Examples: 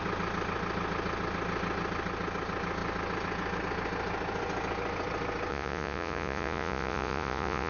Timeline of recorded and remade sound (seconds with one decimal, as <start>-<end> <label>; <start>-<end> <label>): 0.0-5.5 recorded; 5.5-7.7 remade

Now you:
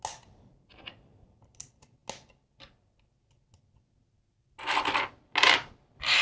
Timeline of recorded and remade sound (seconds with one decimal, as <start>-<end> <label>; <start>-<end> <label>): 0.0-6.2 recorded

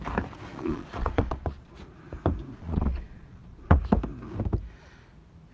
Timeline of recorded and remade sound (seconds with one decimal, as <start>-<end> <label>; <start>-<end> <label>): 0.0-0.5 recorded; 0.5-1.7 remade; 1.7-2.6 recorded; 2.6-3.8 remade; 3.8-5.5 recorded